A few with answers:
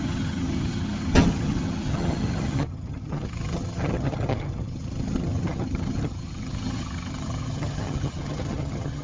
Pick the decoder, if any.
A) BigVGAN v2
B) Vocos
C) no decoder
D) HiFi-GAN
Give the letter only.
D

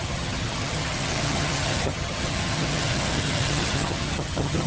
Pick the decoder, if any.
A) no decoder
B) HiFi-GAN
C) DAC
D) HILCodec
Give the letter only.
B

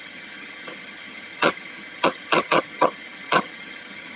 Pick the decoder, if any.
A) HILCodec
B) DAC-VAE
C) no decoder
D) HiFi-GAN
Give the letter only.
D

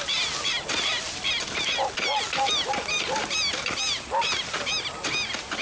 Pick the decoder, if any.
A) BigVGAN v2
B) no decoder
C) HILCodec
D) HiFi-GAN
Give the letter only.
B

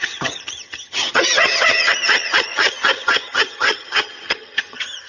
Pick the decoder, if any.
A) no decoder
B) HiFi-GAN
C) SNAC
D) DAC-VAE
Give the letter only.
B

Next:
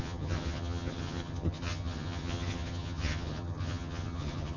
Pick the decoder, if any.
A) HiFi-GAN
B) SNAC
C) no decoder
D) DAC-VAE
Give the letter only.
A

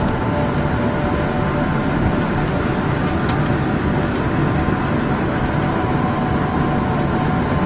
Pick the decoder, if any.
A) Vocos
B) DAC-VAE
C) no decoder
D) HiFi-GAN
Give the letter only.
C